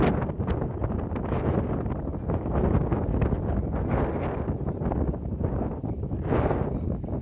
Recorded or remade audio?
recorded